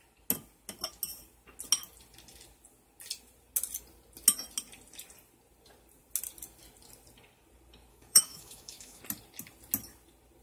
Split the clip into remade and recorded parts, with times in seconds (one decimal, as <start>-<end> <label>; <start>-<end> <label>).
0.0-7.9 recorded; 7.9-9.0 remade; 9.0-10.4 recorded